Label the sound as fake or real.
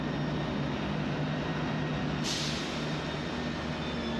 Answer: real